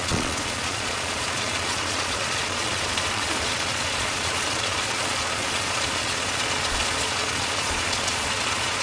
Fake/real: fake